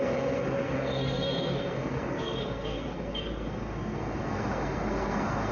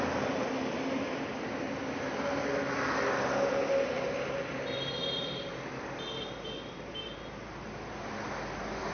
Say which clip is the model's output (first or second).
first